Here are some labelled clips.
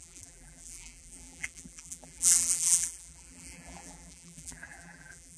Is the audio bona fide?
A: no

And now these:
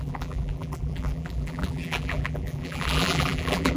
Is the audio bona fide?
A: no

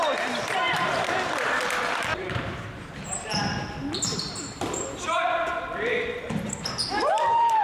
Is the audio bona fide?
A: no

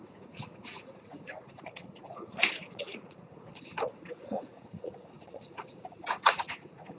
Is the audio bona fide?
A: no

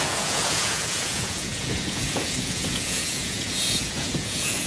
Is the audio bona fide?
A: no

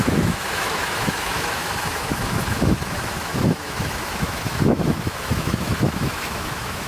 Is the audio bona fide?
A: no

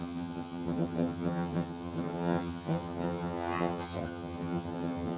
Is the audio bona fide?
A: no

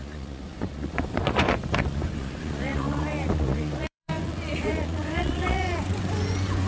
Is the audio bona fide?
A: no